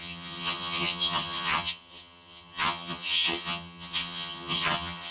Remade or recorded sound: remade